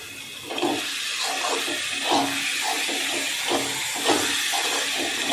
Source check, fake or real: real